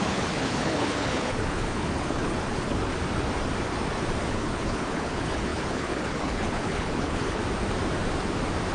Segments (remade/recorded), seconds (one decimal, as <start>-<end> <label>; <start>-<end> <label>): 0.0-2.9 remade; 2.9-4.3 recorded; 4.3-7.4 remade; 7.4-8.7 recorded